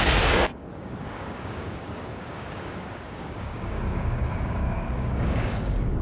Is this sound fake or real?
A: fake